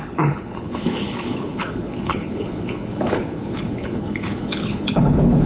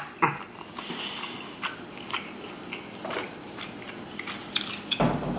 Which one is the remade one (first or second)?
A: first